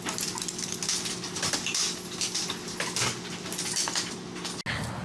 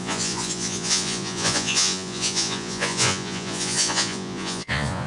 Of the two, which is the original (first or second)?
first